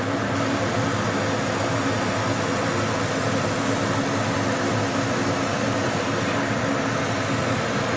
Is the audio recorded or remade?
recorded